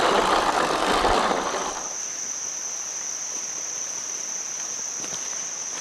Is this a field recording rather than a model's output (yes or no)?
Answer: yes